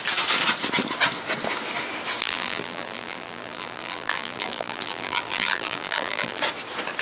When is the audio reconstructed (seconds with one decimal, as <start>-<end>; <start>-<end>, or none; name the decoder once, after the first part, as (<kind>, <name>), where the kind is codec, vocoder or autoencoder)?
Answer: 2.2-6.4 (vocoder, BigVGAN v2)